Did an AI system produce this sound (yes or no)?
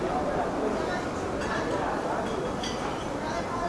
no